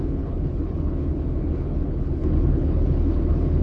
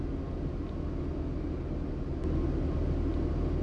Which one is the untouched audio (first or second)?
second